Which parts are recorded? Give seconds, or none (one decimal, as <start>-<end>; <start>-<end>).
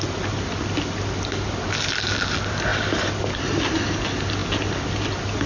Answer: 0.0-5.5